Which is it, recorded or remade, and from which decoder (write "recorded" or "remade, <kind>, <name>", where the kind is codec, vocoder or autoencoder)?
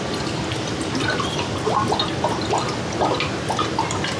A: recorded